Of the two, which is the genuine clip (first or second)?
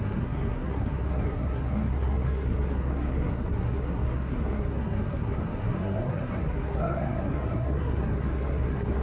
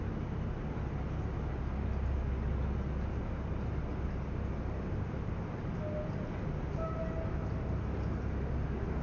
second